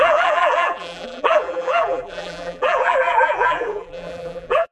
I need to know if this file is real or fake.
fake